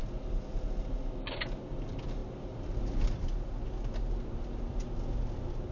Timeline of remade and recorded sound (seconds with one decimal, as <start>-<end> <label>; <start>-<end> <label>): 0.0-5.7 recorded